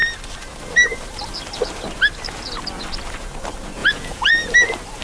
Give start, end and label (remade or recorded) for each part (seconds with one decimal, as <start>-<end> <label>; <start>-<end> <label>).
0.0-3.8 recorded; 3.8-4.3 remade; 4.3-5.0 recorded